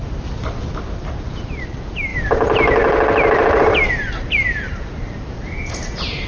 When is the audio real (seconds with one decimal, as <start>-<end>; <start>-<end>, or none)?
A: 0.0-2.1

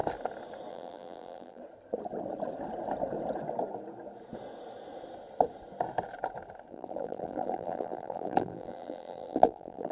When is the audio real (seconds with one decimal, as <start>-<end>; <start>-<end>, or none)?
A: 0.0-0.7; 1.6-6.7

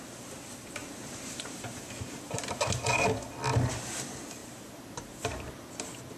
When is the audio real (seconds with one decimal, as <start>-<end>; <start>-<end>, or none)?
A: 0.0-0.8; 2.6-4.4; 5.5-6.2